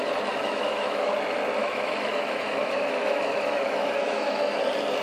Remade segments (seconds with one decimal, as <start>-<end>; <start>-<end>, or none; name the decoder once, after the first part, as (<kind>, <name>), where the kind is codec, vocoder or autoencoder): 0.4-1.1 (autoencoder, DAC-VAE); 1.6-4.6